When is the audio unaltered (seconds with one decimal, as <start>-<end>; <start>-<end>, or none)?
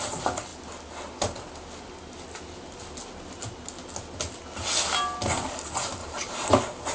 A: 0.0-6.0; 6.5-6.9